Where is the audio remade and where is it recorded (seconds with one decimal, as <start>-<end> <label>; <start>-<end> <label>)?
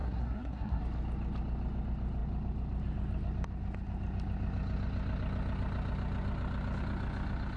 0.0-0.8 remade; 0.8-7.6 recorded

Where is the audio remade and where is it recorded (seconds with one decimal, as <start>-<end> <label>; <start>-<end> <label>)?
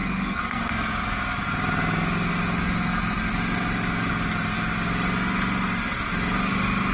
0.0-0.7 remade; 0.7-6.9 recorded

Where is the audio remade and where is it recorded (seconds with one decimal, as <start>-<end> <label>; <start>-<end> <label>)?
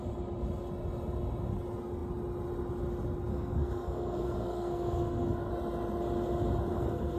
0.0-3.3 recorded; 3.3-5.5 remade; 5.5-6.7 recorded; 6.7-7.2 remade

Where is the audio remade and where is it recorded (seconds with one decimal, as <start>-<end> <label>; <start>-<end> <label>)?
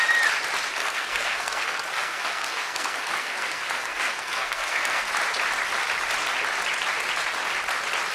0.0-0.8 recorded; 0.8-5.1 remade; 5.1-8.1 recorded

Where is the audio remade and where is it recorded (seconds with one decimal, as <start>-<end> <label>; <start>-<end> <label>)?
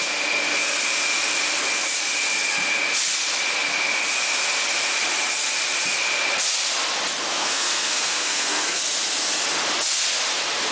0.0-7.3 recorded; 7.3-8.8 remade; 8.8-10.7 recorded